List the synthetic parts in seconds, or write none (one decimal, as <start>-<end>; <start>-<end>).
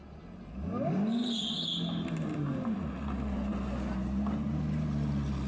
none